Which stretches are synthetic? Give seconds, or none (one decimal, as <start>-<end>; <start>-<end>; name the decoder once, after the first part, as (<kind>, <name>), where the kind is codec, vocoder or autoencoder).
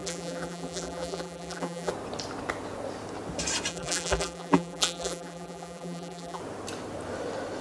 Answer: 0.0-1.9 (vocoder, BigVGAN v2); 3.7-6.4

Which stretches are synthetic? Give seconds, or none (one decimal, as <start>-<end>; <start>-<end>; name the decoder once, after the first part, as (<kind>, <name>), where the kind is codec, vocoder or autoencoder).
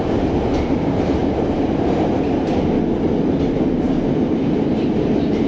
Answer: none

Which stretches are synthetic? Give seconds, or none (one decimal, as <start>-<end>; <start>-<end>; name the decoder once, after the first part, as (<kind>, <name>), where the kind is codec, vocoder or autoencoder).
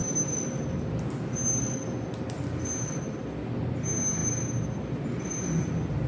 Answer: none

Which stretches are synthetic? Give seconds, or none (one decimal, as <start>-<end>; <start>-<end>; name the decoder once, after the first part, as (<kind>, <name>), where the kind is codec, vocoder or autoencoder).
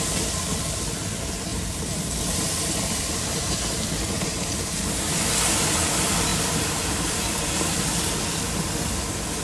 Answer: 1.5-5.3 (vocoder, BigVGAN v2); 6.3-7.5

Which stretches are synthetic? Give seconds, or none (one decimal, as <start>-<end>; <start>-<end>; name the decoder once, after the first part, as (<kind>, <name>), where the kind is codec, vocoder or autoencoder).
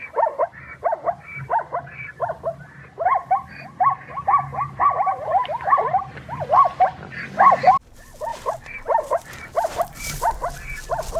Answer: 0.0-2.6 (vocoder, BigVGAN v2); 4.5-6.5; 8.3-10.3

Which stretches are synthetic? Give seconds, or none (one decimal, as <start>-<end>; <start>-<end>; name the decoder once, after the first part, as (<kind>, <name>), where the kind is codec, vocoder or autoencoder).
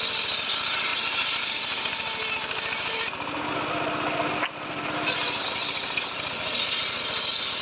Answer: none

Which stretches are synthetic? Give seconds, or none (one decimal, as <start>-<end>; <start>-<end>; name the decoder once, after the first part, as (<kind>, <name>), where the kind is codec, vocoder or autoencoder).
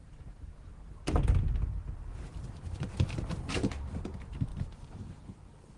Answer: 0.0-0.7 (vocoder, BigVGAN v2); 2.3-3.7; 4.5-5.1